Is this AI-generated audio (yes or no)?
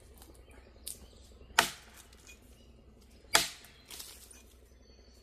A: no